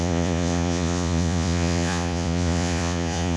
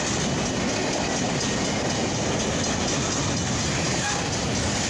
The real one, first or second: second